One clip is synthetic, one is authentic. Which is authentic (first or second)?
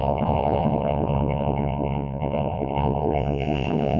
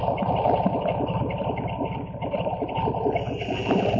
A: second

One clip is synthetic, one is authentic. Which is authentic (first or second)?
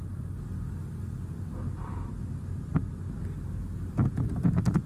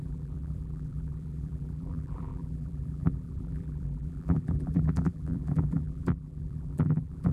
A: first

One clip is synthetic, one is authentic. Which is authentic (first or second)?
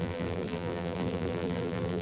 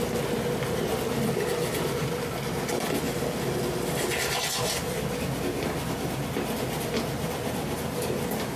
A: second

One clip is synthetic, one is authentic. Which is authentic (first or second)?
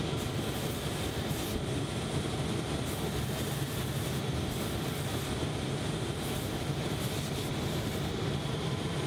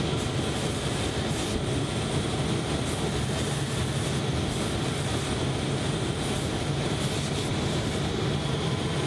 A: second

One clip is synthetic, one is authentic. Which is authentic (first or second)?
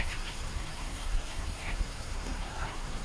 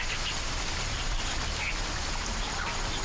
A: second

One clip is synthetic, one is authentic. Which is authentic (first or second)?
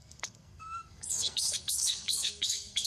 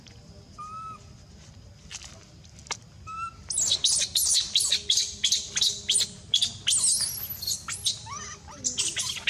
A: second